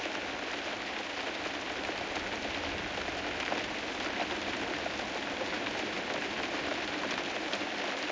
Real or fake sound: real